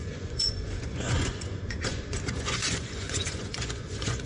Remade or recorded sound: remade